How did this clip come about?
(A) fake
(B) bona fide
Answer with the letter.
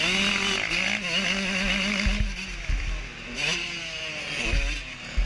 B